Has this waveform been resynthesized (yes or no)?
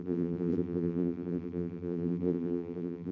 yes